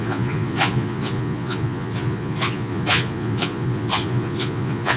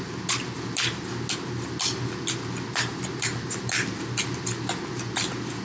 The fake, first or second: first